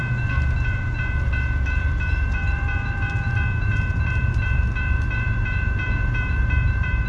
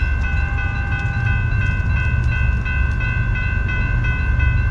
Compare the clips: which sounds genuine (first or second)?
second